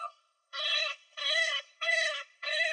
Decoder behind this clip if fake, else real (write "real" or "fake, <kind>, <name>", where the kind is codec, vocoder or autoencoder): fake, codec, SNAC